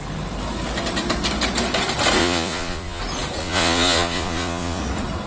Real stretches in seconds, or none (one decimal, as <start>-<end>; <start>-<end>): 0.0-2.2; 3.0-3.4; 4.8-5.3